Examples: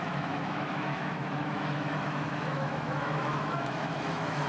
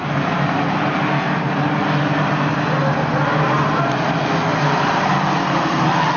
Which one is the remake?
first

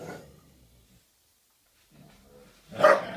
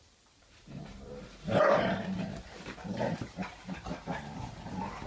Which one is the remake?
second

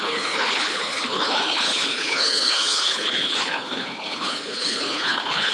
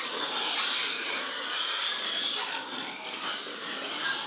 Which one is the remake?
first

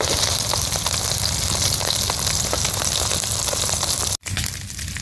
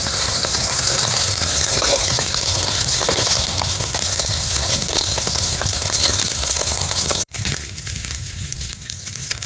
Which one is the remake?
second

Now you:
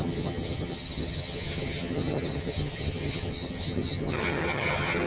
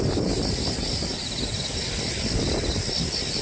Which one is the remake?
first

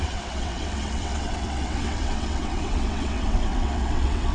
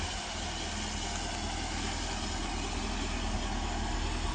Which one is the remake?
first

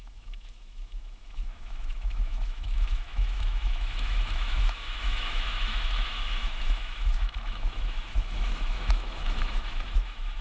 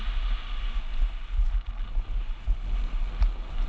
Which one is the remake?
first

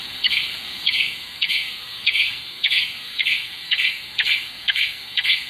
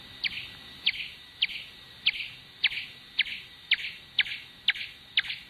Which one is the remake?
first